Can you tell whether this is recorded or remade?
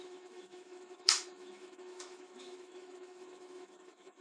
remade